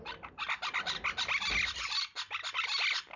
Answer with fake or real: real